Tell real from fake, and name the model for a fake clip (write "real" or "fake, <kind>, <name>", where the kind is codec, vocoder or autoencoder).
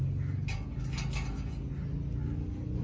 real